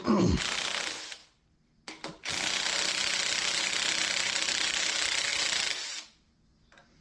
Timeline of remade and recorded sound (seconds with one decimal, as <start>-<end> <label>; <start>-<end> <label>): 0.0-7.0 recorded